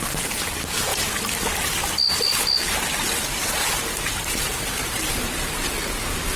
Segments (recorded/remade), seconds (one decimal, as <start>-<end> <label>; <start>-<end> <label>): 0.0-0.9 remade; 0.9-4.3 recorded; 4.3-6.4 remade